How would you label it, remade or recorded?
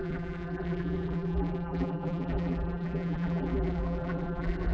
remade